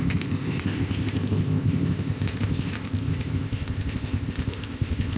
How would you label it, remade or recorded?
remade